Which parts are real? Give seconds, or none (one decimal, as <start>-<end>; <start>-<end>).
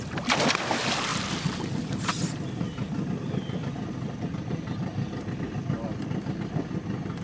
0.0-7.2